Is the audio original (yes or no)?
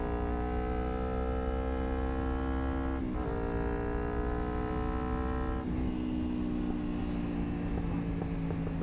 yes